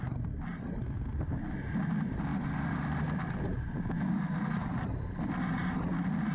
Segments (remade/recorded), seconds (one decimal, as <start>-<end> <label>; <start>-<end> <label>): 0.0-2.3 recorded; 2.3-4.1 remade; 4.1-4.6 recorded; 4.6-5.3 remade; 5.3-6.3 recorded